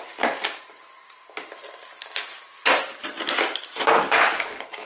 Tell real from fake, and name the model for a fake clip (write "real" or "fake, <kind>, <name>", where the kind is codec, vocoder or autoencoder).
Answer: real